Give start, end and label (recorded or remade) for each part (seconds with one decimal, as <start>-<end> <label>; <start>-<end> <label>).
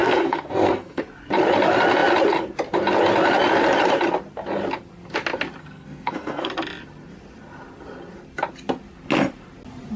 0.0-1.0 remade; 1.0-5.6 recorded; 5.6-6.5 remade; 6.5-10.0 recorded